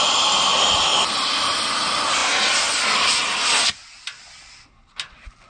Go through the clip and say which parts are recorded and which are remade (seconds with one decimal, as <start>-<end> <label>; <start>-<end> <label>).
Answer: 0.0-5.5 recorded